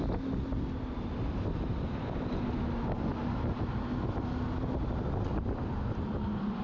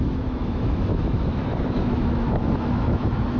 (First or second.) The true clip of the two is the first